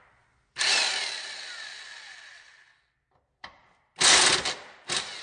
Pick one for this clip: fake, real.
real